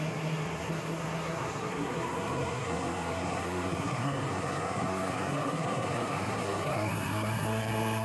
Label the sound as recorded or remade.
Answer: remade